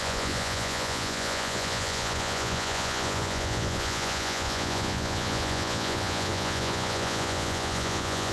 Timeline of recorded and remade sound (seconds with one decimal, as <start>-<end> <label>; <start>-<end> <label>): 0.0-8.3 remade

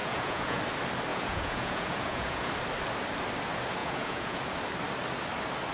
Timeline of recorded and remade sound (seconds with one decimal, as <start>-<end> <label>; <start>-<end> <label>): 0.0-0.6 remade; 0.6-1.1 recorded; 1.1-2.5 remade; 2.5-3.8 recorded; 3.8-4.4 remade; 4.4-5.7 recorded